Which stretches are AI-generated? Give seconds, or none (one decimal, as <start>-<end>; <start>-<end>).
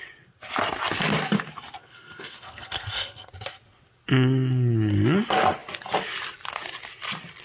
1.8-3.3